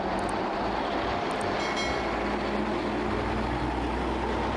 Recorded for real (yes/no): yes